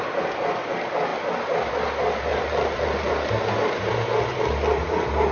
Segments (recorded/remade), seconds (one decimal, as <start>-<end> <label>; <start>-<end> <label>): 0.0-2.3 recorded; 2.3-3.1 remade; 3.1-5.3 recorded